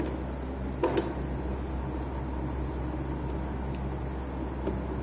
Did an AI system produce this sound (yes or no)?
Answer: no